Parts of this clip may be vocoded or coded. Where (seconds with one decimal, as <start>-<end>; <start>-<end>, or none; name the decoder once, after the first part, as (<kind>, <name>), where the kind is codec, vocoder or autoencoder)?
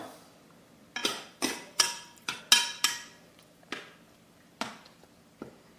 1.0-2.4 (vocoder, BigVGAN v2)